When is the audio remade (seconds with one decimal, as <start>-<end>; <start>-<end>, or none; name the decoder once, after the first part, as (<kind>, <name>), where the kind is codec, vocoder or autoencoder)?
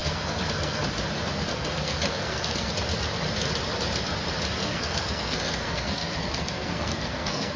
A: 0.0-0.8 (codec, SNAC); 1.5-2.7; 4.6-7.6